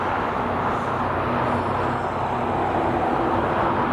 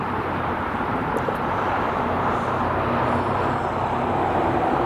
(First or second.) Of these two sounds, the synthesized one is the second